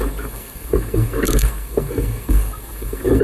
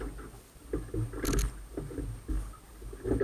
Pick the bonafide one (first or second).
second